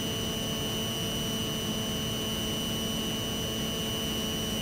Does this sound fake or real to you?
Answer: real